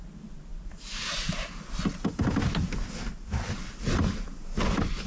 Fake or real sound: real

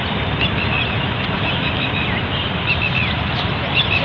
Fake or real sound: real